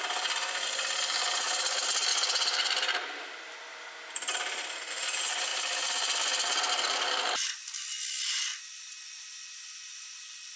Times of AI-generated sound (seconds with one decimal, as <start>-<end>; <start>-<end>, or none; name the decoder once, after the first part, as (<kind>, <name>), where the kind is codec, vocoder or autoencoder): 0.0-2.1 (vocoder, BigVGAN v2); 4.9-10.6